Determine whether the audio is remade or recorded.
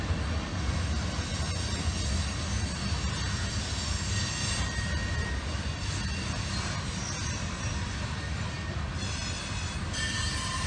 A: recorded